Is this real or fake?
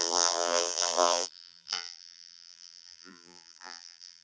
fake